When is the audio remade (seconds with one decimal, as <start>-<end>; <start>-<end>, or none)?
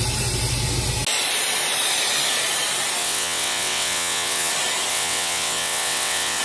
3.0-4.5; 4.9-6.4